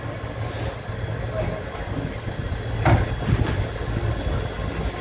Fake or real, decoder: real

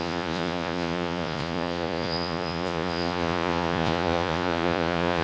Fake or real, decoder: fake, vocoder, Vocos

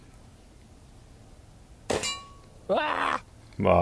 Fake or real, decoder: real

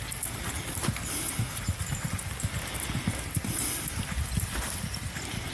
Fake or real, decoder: real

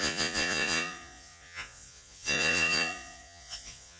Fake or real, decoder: fake, vocoder, Vocos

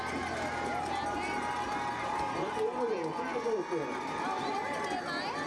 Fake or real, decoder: real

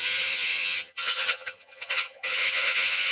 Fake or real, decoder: fake, vocoder, HiFi-GAN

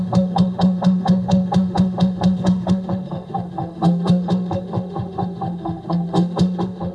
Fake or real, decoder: fake, autoencoder, DAC-VAE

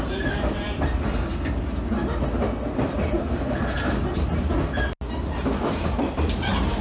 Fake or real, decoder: real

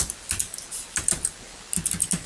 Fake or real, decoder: real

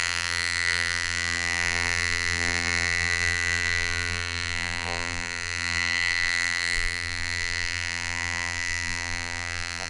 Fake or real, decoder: fake, vocoder, BigVGAN v2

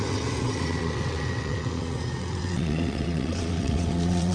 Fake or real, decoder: fake, vocoder, WaveNeXt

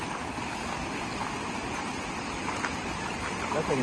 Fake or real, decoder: real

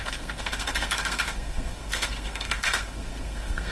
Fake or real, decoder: fake, codec, SNAC